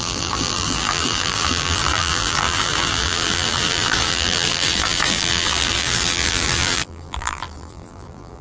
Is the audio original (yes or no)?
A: no